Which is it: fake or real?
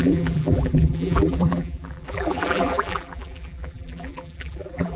fake